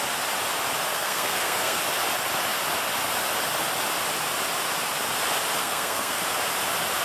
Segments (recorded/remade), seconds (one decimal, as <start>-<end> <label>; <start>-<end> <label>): 0.0-0.9 recorded; 0.9-1.8 remade; 1.8-5.6 recorded; 5.6-6.2 remade; 6.2-7.0 recorded